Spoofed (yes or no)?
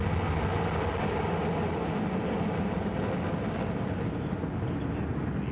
no